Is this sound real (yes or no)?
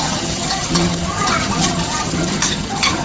no